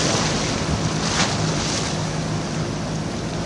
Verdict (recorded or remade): recorded